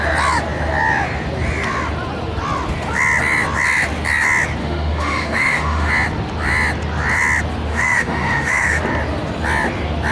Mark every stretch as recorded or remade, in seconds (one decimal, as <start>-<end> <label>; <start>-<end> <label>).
0.0-4.6 recorded; 4.6-5.9 remade; 5.9-7.7 recorded; 7.7-8.8 remade; 8.8-10.1 recorded